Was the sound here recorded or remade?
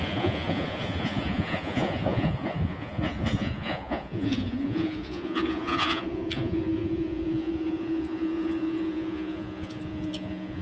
remade